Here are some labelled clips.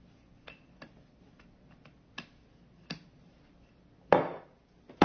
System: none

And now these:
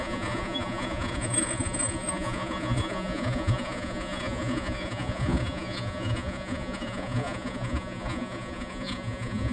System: vocoder, Vocos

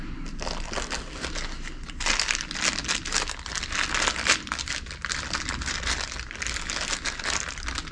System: none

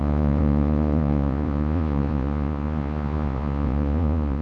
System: vocoder, Vocos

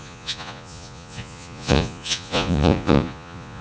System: vocoder, Vocos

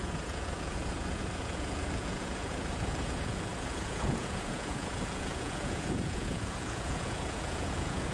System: vocoder, Vocos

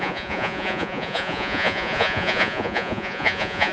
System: vocoder, Vocos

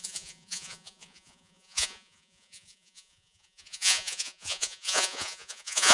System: vocoder, Vocos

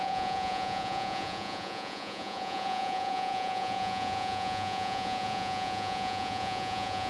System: vocoder, Vocos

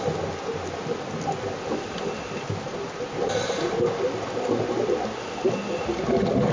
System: none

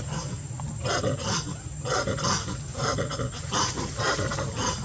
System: none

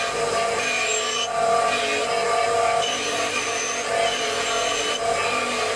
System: none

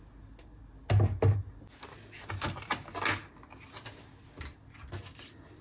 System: none